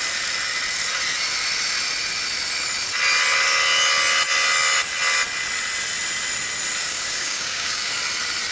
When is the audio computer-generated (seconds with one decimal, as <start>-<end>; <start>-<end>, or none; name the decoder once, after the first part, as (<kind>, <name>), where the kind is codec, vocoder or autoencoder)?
6.8-7.9 (codec, DAC)